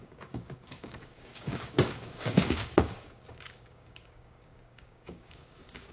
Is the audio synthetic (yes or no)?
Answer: yes